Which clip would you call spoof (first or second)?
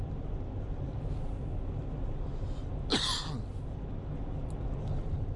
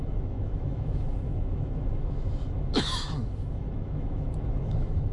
second